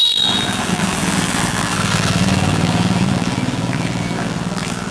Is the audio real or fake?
fake